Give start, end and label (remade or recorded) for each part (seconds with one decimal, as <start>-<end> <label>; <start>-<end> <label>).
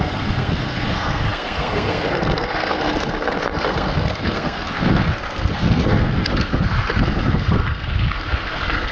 0.0-8.9 remade